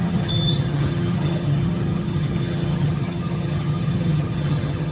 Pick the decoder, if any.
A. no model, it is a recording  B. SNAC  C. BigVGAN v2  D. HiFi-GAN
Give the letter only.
D